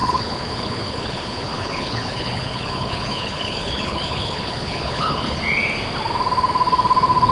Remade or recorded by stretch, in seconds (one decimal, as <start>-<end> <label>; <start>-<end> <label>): 0.0-5.4 remade; 5.4-7.3 recorded